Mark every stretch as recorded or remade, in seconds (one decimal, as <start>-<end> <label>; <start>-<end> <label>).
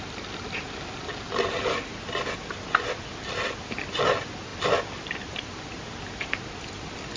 0.0-7.2 recorded